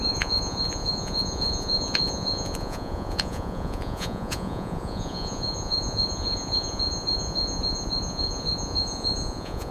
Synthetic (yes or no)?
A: yes